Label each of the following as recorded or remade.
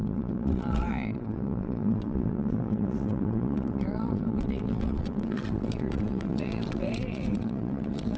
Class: remade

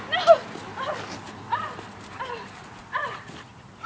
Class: recorded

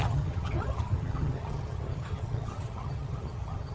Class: remade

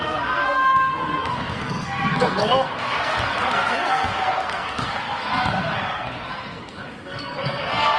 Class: remade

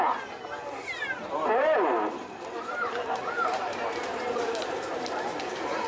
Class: remade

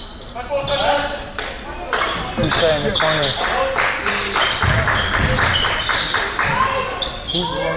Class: recorded